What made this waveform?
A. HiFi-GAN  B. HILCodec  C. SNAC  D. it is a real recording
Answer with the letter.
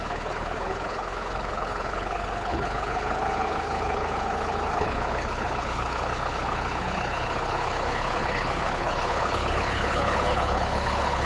B